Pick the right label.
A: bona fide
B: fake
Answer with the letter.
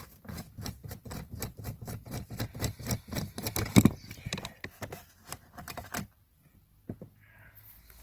A